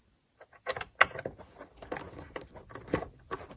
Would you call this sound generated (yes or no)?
no